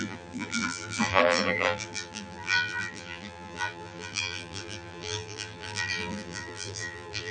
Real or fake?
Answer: fake